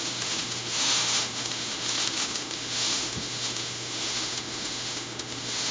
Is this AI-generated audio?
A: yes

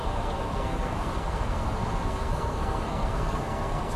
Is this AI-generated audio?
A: yes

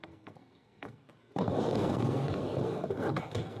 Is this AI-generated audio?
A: yes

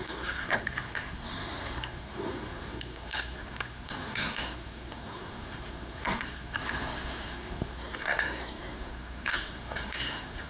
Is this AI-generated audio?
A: yes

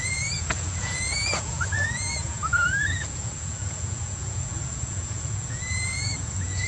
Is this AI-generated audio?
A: yes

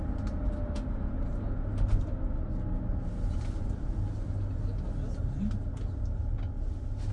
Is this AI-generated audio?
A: no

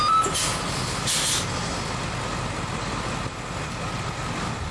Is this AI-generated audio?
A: no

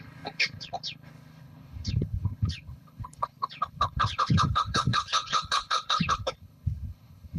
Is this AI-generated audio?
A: yes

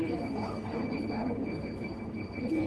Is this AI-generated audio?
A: yes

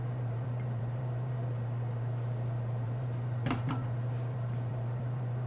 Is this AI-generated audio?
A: yes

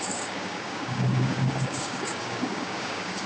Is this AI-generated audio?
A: yes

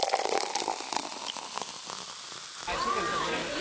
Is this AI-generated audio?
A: no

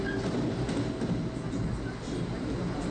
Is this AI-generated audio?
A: no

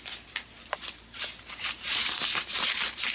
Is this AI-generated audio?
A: yes